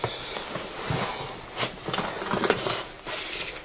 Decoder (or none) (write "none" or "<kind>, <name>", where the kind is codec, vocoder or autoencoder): none